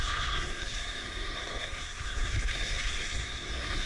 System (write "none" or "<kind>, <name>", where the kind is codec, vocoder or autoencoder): codec, SNAC